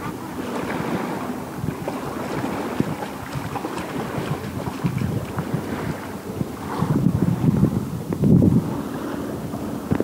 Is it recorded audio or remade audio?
recorded